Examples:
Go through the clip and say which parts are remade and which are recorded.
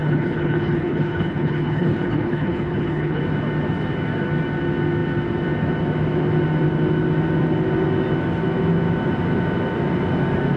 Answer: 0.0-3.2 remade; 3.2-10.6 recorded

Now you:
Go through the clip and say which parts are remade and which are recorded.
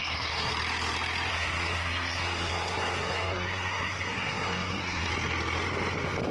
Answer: 0.0-0.5 remade; 0.5-1.3 recorded; 1.3-5.1 remade; 5.1-6.3 recorded